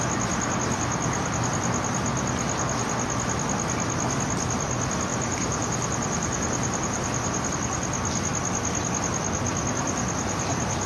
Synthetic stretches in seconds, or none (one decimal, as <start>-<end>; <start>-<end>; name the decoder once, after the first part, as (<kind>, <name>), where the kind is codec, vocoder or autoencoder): 5.1-7.5 (vocoder, BigVGAN v2)